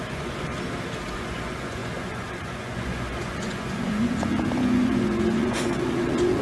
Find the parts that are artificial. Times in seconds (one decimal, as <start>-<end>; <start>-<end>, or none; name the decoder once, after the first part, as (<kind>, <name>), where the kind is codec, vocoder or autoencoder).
0.0-0.5 (vocoder, Vocos); 1.1-6.4